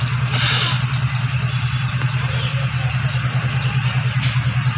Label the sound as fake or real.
real